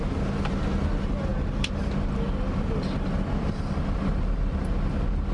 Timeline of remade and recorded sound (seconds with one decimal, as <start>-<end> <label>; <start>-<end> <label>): 0.0-5.3 recorded